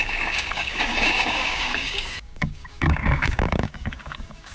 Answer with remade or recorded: remade